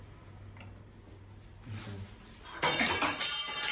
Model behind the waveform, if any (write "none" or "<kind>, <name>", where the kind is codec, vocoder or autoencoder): none